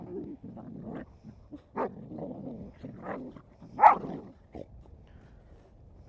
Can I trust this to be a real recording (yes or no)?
yes